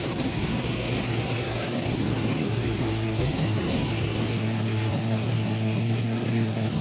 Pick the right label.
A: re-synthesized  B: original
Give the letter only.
A